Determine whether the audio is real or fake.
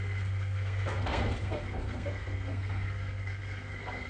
fake